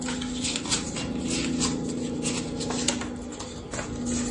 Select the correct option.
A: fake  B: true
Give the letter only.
B